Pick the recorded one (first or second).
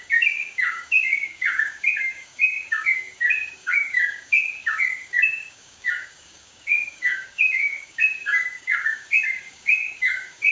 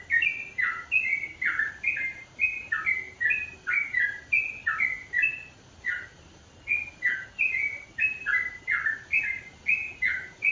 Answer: second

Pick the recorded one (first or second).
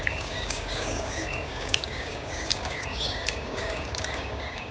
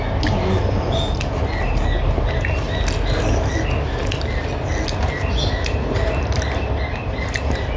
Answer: second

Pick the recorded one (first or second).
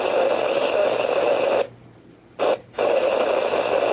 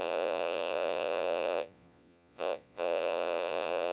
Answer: first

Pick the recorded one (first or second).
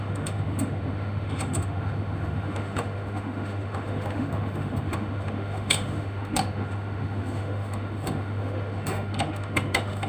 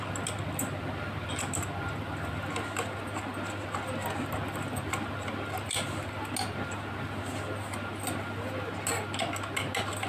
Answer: second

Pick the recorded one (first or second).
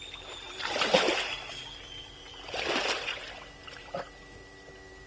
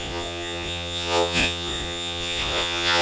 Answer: first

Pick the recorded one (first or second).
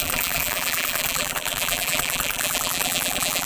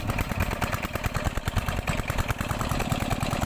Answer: second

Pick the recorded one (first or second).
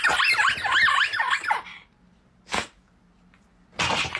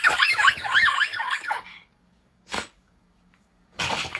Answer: first